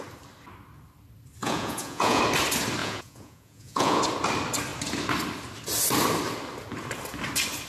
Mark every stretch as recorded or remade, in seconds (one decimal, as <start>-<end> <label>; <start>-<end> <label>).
0.0-1.4 recorded; 1.4-2.2 remade; 2.2-2.8 recorded; 2.8-4.0 remade; 4.0-7.7 recorded